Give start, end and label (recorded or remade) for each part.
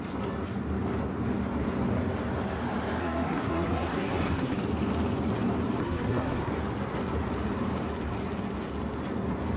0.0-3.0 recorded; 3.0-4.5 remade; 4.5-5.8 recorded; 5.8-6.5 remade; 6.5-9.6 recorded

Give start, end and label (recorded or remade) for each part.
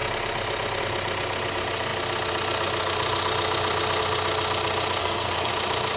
0.0-5.0 recorded; 5.0-5.5 remade; 5.5-6.0 recorded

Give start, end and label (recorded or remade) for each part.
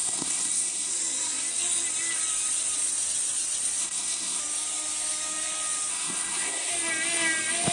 0.0-0.9 remade; 0.9-3.8 recorded; 3.8-4.4 remade; 4.4-5.9 recorded; 5.9-6.7 remade; 6.7-7.7 recorded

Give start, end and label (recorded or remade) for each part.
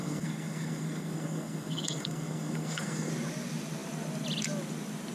0.0-3.1 remade; 3.1-5.1 recorded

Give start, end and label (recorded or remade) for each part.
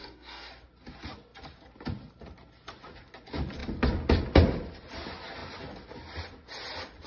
0.0-0.5 remade; 0.5-7.1 recorded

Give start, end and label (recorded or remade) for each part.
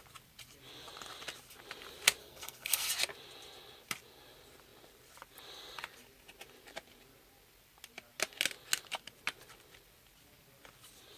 0.0-2.2 recorded; 2.2-2.9 remade; 2.9-11.2 recorded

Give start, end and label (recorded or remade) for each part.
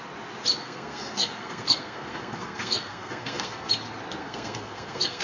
0.0-0.6 recorded; 0.6-3.7 remade; 3.7-4.2 recorded; 4.2-5.2 remade